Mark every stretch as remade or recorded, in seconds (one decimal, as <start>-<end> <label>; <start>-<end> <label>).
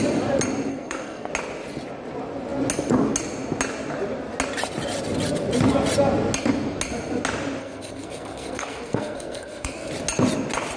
0.0-0.7 recorded; 0.7-1.3 remade; 1.3-7.6 recorded; 7.6-9.9 remade; 9.9-10.8 recorded